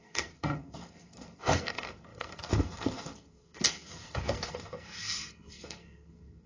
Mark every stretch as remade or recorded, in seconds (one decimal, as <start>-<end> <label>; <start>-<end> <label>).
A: 0.0-6.5 remade